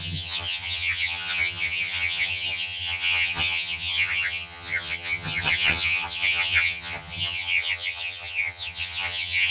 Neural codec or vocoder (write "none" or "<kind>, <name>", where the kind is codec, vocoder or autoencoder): vocoder, HiFi-GAN